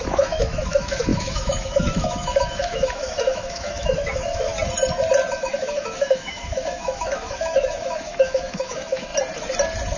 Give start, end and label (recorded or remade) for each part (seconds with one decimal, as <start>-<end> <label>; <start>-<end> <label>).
0.0-4.5 remade; 4.5-5.3 recorded; 5.3-9.1 remade; 9.1-10.0 recorded